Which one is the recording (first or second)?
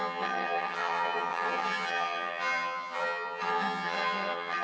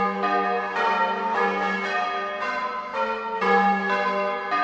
second